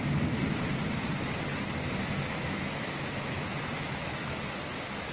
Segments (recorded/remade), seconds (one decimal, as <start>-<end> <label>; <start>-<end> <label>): 0.0-1.8 recorded; 1.8-4.4 remade; 4.4-5.1 recorded